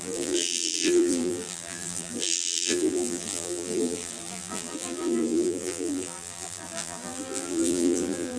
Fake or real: fake